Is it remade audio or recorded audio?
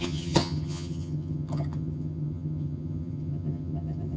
remade